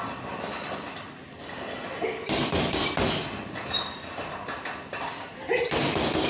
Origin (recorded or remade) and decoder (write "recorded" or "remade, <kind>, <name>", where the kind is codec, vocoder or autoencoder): recorded